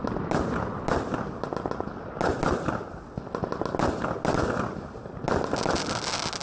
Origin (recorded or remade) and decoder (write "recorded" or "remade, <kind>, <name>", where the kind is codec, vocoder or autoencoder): recorded